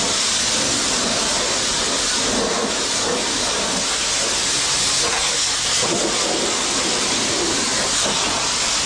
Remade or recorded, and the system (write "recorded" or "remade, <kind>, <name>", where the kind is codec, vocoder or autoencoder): recorded